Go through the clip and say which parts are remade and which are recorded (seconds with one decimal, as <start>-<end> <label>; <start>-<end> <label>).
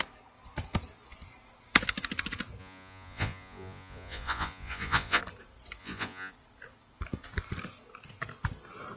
0.0-2.6 recorded; 2.6-5.2 remade; 5.2-5.8 recorded; 5.8-6.3 remade; 6.3-9.0 recorded